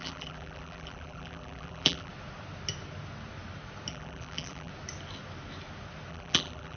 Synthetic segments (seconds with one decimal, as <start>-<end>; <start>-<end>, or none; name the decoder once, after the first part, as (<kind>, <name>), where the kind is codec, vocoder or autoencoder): 0.0-2.1 (vocoder, BigVGAN v2); 3.9-4.7; 6.1-6.8